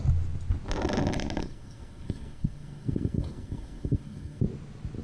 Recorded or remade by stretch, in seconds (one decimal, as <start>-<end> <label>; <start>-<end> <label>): 0.0-1.4 recorded; 1.4-4.4 remade; 4.4-5.0 recorded